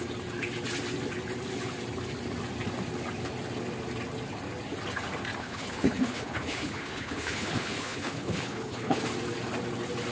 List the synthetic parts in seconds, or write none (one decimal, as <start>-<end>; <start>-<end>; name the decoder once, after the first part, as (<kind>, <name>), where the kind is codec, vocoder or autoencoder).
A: 5.4-9.0 (codec, HILCodec)